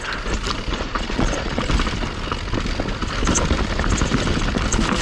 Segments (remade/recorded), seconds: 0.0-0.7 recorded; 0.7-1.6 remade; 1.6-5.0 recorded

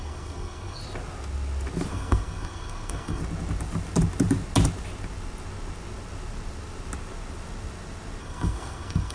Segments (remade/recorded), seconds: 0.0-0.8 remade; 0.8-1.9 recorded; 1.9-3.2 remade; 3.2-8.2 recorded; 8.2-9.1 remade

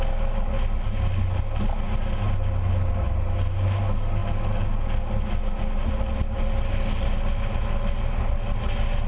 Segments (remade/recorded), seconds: 0.0-9.1 recorded

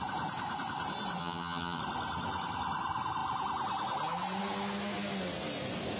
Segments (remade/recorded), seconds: 0.0-1.2 recorded; 1.2-1.8 remade; 1.8-6.0 recorded